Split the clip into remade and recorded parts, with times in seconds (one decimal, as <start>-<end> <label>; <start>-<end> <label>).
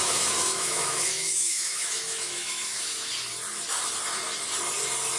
0.0-3.1 remade; 3.1-5.2 recorded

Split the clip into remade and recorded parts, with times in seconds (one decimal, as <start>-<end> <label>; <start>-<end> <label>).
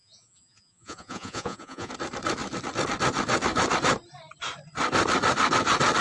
0.0-1.9 remade; 1.9-6.0 recorded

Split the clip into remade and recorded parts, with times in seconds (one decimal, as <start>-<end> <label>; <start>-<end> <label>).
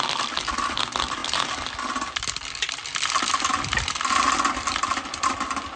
0.0-5.8 recorded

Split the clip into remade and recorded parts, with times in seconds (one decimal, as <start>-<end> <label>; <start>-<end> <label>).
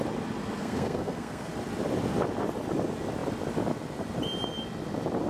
0.0-0.6 recorded; 0.6-1.5 remade; 1.5-5.3 recorded